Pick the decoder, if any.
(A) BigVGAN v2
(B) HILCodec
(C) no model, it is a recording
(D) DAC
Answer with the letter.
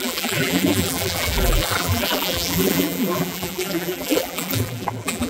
A